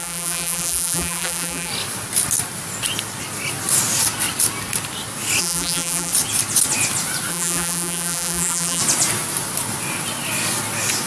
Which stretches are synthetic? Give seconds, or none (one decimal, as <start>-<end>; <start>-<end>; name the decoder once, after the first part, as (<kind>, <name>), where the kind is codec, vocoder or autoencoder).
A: 0.0-1.7 (vocoder, BigVGAN v2); 5.4-6.1; 7.3-8.8